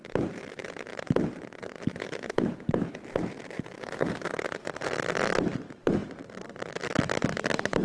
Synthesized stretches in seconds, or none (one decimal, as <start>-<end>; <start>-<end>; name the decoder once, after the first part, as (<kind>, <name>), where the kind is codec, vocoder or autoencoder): 0.0-7.8 (vocoder, BigVGAN v2)